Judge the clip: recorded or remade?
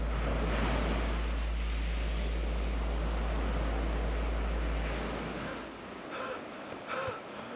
recorded